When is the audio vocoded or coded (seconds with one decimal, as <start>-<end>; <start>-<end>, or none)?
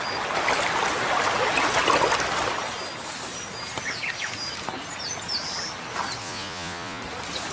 6.2-7.0